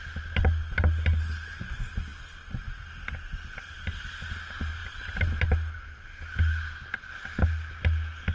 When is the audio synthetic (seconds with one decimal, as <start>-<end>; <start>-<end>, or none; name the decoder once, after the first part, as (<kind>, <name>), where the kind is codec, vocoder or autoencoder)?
none